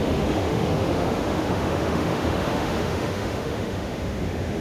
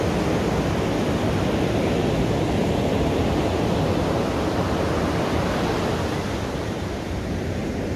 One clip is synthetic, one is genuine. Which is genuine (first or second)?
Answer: second